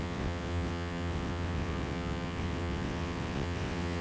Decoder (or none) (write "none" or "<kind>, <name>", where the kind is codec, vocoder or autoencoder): vocoder, WaveNeXt